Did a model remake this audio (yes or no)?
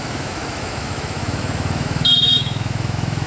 yes